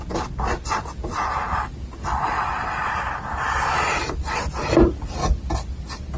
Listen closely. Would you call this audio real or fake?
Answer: real